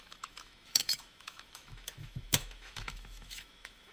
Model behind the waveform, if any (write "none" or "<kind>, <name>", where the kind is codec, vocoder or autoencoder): autoencoder, DAC-VAE